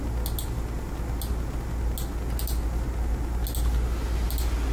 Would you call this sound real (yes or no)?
yes